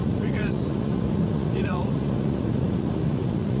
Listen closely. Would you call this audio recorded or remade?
remade